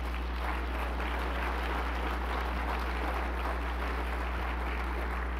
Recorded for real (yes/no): yes